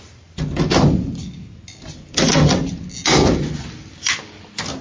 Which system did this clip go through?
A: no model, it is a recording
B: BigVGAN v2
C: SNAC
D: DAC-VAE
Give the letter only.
A